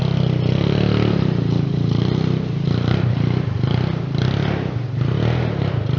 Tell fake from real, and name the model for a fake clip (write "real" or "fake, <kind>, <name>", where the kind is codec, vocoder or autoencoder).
real